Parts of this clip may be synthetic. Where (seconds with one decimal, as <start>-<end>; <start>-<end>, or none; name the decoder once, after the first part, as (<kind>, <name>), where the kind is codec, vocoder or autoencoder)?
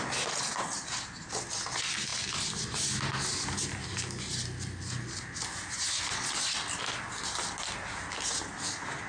none